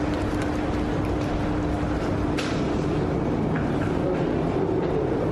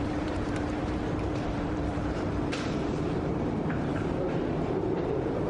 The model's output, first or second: second